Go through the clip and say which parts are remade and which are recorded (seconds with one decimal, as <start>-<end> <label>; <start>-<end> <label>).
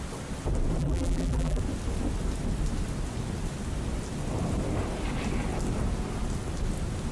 0.0-0.8 recorded; 0.8-1.6 remade; 1.6-7.1 recorded